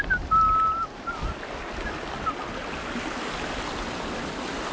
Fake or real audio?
real